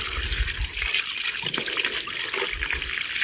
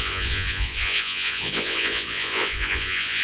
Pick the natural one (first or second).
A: first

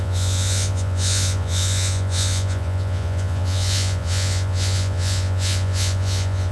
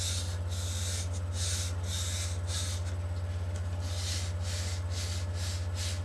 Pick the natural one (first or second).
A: second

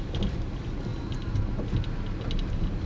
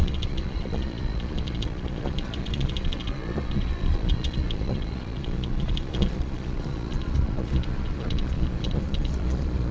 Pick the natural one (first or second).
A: first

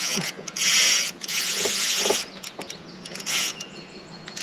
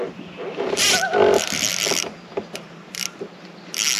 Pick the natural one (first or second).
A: second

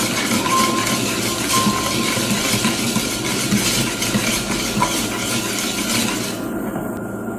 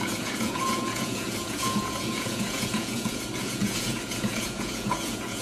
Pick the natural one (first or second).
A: first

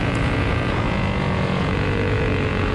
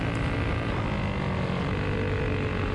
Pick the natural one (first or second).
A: second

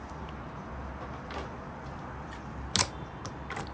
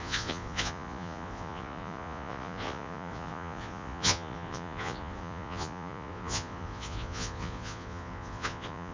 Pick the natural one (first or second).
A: first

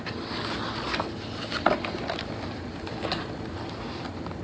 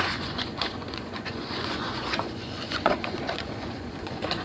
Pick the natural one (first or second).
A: first